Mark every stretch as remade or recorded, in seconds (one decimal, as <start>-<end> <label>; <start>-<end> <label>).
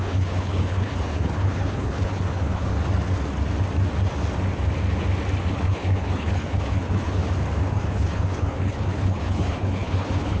0.0-2.7 remade; 2.7-5.5 recorded; 5.5-7.2 remade; 7.2-7.7 recorded; 7.7-10.4 remade